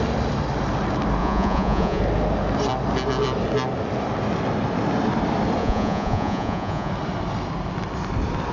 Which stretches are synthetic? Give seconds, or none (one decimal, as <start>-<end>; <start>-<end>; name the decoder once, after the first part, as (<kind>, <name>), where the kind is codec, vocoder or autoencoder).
1.2-2.0 (vocoder, Vocos); 5.6-6.9